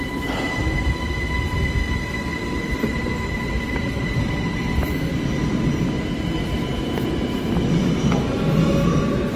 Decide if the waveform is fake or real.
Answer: real